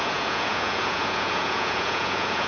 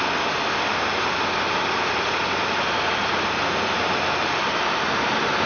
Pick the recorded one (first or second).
second